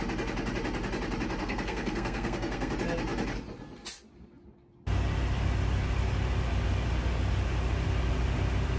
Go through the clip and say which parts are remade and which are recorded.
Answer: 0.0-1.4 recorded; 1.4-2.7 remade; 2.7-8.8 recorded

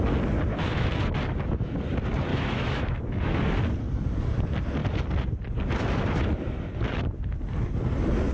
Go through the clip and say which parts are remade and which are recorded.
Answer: 0.0-0.5 recorded; 0.5-1.0 remade; 1.0-2.3 recorded; 2.3-3.4 remade; 3.4-8.3 recorded

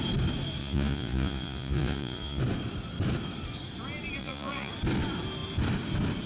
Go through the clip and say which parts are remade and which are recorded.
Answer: 0.0-0.6 recorded; 0.6-2.4 remade; 2.4-4.2 recorded; 4.2-4.7 remade; 4.7-6.3 recorded

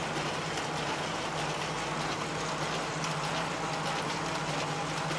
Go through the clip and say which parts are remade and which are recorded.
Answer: 0.0-5.2 recorded

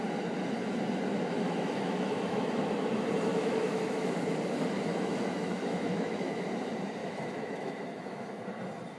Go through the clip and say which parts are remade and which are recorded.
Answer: 0.0-1.1 recorded; 1.1-2.5 remade; 2.5-3.3 recorded; 3.3-4.2 remade; 4.2-4.9 recorded; 4.9-6.4 remade; 6.4-7.0 recorded; 7.0-8.4 remade; 8.4-9.0 recorded

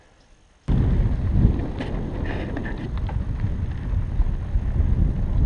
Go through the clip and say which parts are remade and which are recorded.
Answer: 0.0-5.5 recorded